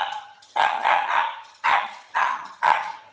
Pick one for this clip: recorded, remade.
remade